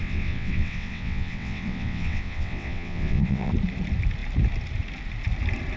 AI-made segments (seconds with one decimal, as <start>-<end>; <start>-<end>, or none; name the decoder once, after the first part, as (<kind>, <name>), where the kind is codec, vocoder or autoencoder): 0.0-3.5 (vocoder, WaveNeXt)